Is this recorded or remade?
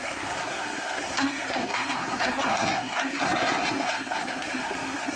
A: remade